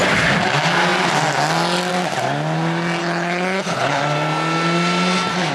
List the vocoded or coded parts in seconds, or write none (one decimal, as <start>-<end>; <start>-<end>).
3.0-4.0